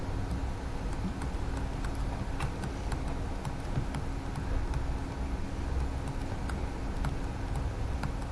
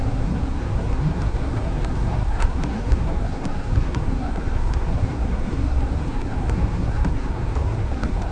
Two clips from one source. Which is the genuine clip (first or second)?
first